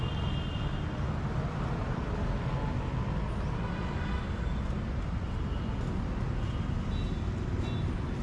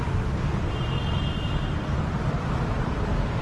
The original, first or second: first